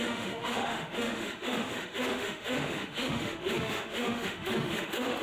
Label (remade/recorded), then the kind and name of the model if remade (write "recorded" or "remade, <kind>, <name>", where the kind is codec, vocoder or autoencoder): remade, autoencoder, DAC-VAE